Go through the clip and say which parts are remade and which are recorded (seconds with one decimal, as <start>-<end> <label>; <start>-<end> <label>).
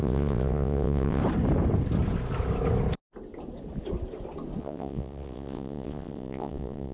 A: 0.0-1.2 remade; 1.2-4.6 recorded; 4.6-6.9 remade